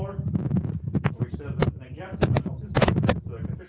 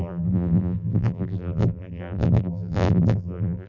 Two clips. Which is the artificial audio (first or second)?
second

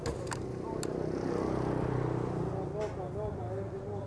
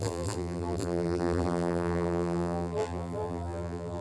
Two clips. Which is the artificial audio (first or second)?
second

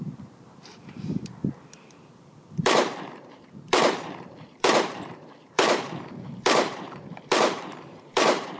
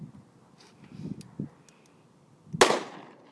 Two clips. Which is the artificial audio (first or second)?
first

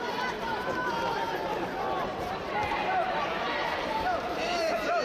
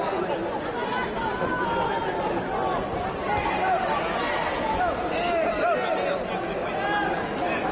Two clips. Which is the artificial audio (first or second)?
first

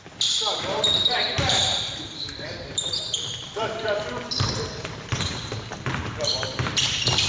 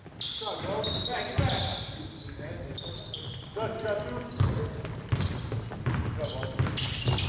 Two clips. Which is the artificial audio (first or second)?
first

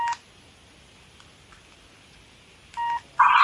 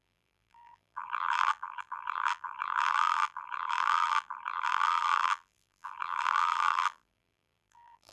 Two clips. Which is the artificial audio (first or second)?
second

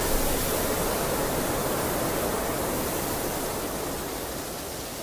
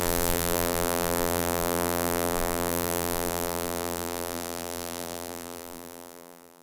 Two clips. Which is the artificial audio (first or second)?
second